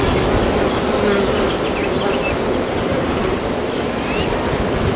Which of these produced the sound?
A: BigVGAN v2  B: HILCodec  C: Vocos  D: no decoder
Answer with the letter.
D